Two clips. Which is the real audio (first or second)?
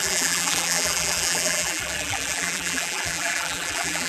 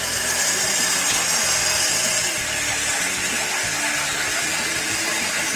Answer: second